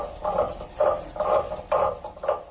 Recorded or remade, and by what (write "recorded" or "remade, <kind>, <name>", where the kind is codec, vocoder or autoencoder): recorded